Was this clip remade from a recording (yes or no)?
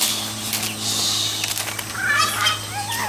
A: no